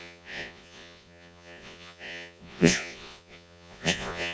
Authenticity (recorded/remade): remade